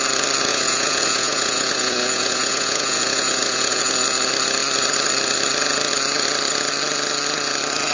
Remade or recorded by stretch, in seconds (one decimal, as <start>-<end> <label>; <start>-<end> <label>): 0.0-0.5 recorded; 0.5-3.9 remade; 3.9-7.9 recorded